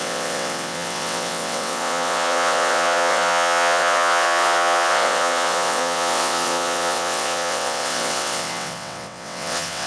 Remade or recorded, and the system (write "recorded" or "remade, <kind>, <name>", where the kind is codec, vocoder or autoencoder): remade, vocoder, WaveNeXt